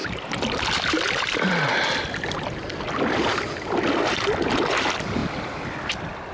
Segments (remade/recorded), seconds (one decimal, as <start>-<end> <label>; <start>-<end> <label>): 0.0-3.3 recorded; 3.3-4.1 remade; 4.1-5.2 recorded; 5.2-6.3 remade